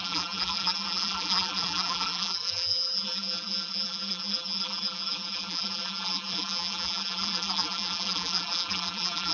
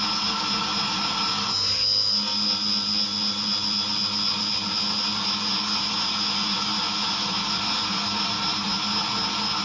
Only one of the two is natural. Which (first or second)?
second